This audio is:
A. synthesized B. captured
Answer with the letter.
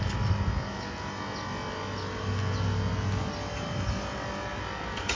B